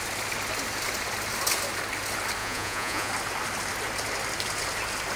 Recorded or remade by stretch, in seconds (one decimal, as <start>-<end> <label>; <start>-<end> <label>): 0.0-2.4 recorded; 2.4-3.1 remade; 3.1-5.2 recorded